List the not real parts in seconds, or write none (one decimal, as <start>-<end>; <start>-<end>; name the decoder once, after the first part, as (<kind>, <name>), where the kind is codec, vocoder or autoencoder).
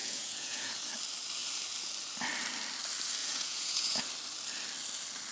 0.0-0.8 (vocoder, Vocos); 3.2-4.0